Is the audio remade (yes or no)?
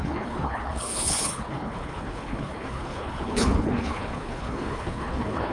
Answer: yes